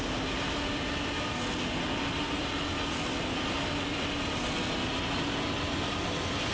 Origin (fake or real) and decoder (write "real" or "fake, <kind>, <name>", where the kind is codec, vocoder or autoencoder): real